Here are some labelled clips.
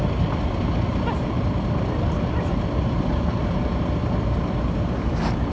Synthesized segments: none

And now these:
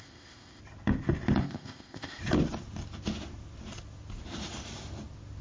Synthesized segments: 0.0-0.6 (codec, ZipCodec); 1.4-2.2